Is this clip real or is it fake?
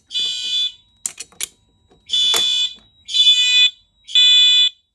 real